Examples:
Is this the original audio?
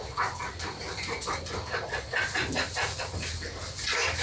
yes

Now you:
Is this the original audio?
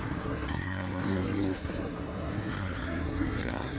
no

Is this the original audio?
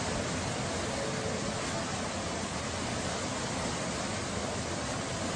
yes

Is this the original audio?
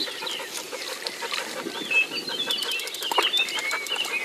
yes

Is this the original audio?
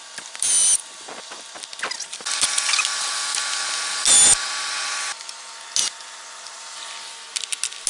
yes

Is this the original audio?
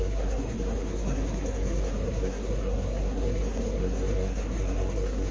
no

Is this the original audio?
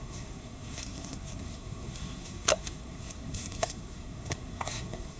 no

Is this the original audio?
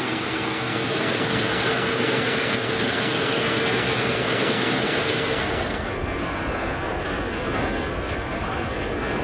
no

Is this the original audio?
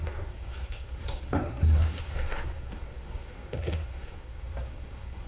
no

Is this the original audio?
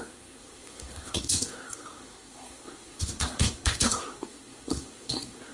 no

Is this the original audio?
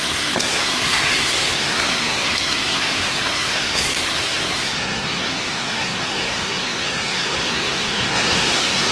no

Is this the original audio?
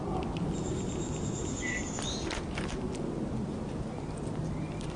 yes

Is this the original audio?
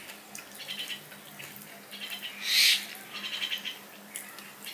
yes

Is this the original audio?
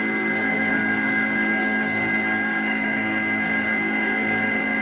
no